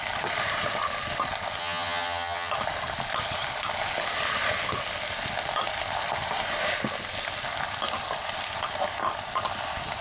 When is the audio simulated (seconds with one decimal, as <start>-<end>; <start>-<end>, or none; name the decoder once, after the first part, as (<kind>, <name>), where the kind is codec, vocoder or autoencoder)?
1.6-2.5 (vocoder, HiFi-GAN)